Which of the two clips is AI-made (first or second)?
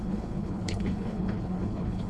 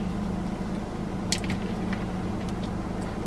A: first